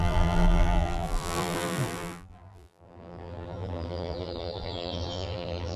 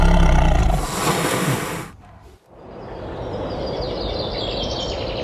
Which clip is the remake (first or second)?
first